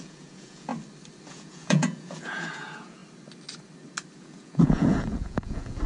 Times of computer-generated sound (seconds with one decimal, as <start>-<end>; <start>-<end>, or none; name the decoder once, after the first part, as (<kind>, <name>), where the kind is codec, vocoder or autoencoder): 0.0-0.7 (vocoder, Vocos); 1.3-3.0; 4.2-5.9